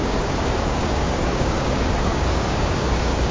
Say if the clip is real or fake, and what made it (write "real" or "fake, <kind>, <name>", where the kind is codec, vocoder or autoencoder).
fake, codec, DAC